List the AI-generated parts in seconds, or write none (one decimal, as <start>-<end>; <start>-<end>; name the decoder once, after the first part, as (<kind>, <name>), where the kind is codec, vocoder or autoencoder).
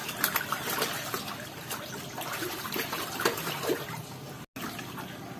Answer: 0.0-1.9 (vocoder, BigVGAN v2); 2.4-4.0